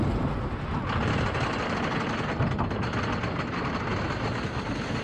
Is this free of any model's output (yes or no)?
yes